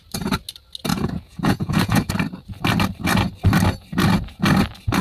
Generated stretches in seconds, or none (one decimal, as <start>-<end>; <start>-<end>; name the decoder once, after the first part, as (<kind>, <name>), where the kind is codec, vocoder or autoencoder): 0.9-2.1 (vocoder, Vocos)